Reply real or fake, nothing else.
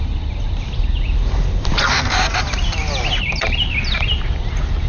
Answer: real